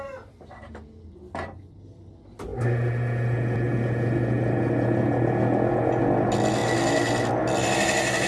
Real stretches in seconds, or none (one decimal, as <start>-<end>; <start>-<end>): 0.0-8.3